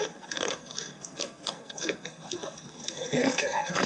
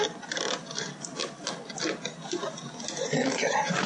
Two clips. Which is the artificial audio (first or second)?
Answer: first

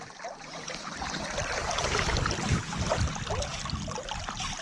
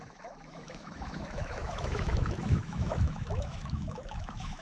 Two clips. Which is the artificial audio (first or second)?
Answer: second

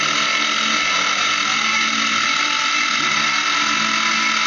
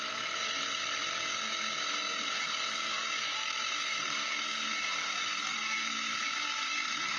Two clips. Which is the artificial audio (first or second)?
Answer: second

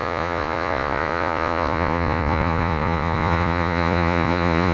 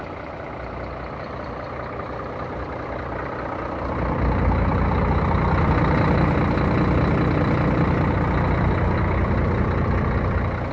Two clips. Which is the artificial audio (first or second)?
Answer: first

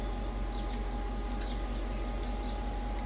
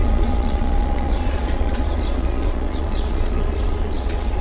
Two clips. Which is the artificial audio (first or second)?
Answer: second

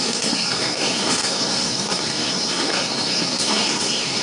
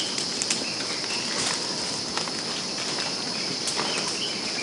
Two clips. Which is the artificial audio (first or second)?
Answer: first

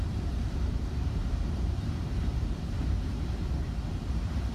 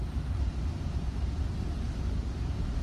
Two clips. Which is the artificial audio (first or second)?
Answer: first